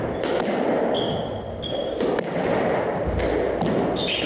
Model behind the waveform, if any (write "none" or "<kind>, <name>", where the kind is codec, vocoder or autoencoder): none